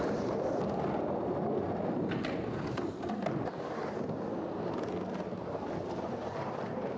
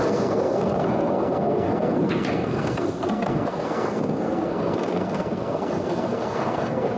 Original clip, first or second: first